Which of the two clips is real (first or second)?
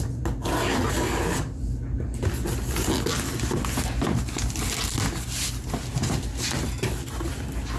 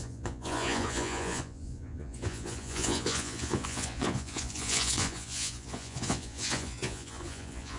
first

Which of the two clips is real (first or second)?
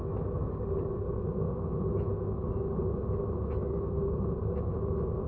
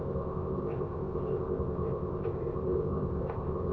first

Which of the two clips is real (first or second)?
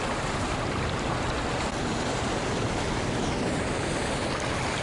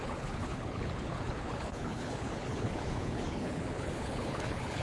first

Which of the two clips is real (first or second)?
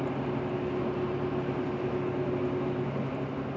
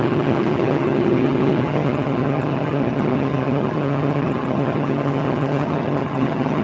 first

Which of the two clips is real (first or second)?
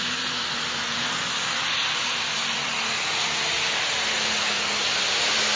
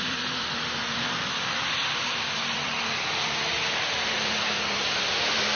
first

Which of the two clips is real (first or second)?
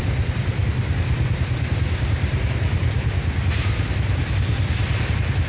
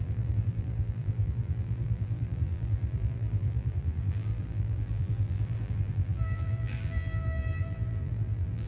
first